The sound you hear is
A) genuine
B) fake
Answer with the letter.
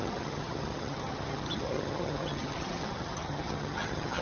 B